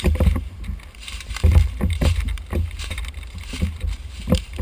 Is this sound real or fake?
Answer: fake